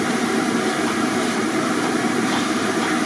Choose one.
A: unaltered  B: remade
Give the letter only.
B